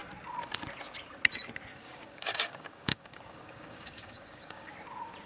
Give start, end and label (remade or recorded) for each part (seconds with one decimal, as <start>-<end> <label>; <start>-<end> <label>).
0.0-1.7 recorded; 1.7-4.7 remade; 4.7-5.3 recorded